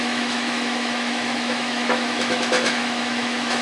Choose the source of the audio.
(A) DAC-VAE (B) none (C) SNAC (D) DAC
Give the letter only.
A